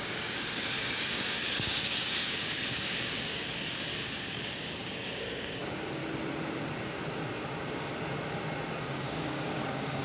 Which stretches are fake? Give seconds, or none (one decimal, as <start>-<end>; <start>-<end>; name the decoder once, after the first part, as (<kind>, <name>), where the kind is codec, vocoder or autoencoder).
0.0-6.0 (codec, DAC); 8.9-10.0